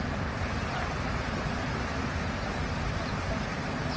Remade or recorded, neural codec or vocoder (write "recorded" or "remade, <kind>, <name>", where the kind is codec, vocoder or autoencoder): recorded